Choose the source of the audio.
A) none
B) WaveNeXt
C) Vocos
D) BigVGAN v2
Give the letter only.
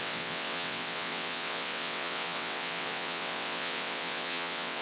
B